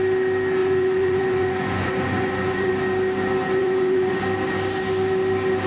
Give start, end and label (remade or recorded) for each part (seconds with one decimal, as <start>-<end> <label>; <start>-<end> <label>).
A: 0.0-0.6 recorded; 0.6-2.7 remade; 2.7-3.6 recorded; 3.6-4.2 remade; 4.2-5.7 recorded